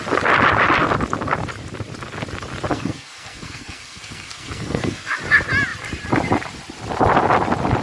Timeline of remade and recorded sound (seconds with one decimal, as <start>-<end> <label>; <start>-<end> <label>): 0.0-2.7 recorded; 2.7-5.1 remade; 5.1-7.8 recorded